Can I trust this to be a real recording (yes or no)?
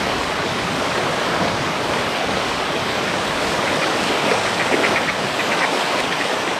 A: no